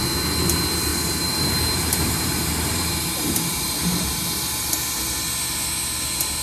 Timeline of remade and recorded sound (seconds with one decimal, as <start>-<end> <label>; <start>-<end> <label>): 0.0-0.9 recorded; 0.9-4.7 remade; 4.7-6.4 recorded